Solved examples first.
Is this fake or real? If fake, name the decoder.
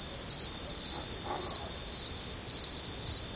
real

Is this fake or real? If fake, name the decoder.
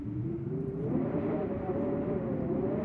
real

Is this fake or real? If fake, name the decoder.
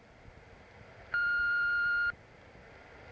real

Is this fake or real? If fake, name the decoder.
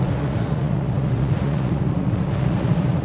fake, vocoder, Vocos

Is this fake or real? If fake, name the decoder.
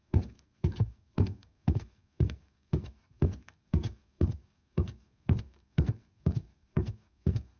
fake, codec, SNAC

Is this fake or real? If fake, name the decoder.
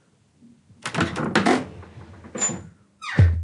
real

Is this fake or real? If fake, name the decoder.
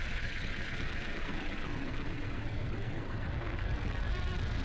fake, codec, SNAC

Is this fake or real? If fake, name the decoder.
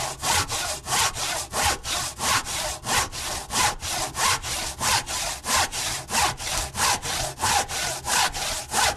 real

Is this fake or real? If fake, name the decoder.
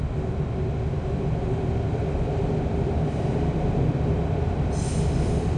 real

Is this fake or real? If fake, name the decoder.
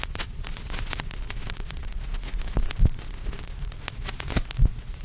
fake, vocoder, Vocos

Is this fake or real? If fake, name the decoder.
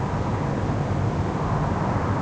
real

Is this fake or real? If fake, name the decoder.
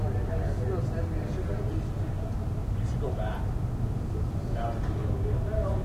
real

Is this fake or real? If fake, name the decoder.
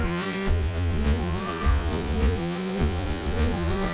fake, vocoder, Vocos